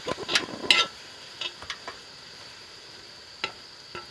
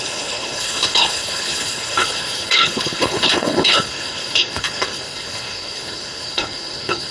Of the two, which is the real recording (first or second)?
first